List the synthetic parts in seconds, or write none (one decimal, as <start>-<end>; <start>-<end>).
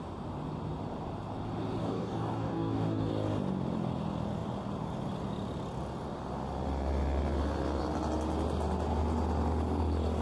1.8-3.1